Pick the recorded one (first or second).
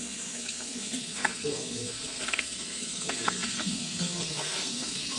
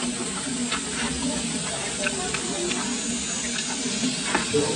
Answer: second